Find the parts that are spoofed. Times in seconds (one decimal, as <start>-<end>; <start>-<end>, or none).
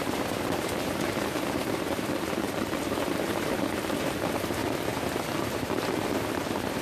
0.0-4.6; 5.5-6.8